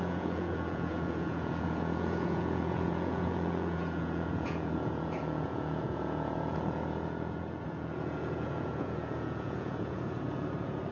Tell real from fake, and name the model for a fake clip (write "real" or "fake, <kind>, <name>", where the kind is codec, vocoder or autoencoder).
fake, vocoder, Vocos